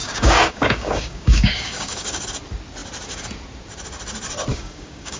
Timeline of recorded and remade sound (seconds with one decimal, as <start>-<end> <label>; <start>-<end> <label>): 0.0-2.2 remade; 2.2-4.5 recorded; 4.5-5.2 remade